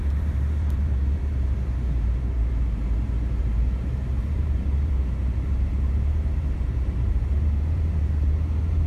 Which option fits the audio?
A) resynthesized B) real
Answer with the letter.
A